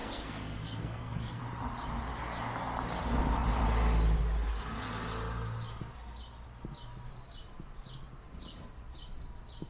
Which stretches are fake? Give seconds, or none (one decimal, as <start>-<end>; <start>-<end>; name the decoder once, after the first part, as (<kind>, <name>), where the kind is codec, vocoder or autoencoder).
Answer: 0.0-1.4 (codec, SNAC)